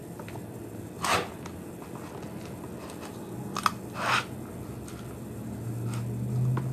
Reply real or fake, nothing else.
real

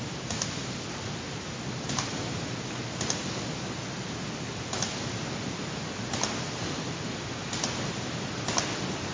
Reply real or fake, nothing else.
real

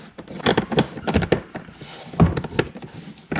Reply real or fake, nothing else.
real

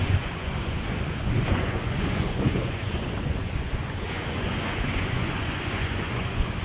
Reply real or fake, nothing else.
fake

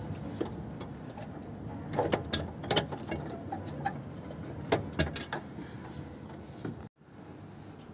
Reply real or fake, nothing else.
real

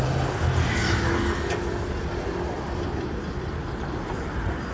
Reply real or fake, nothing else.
real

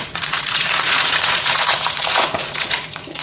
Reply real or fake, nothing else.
fake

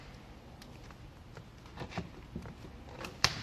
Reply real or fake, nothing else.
real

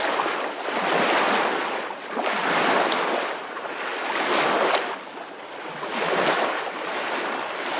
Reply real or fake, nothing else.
real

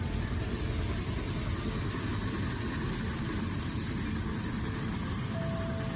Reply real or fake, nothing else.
real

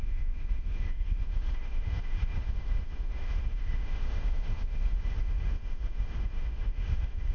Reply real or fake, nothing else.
fake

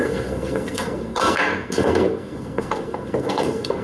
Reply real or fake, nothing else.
fake